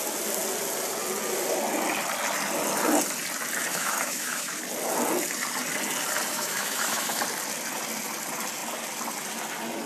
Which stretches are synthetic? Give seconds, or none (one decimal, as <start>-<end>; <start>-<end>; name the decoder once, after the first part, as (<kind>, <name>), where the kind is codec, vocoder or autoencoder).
3.7-4.6 (autoencoder, DAC-VAE); 6.3-7.2